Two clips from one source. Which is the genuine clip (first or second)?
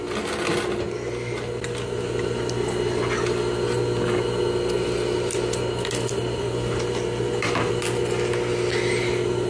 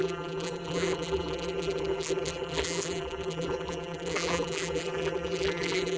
first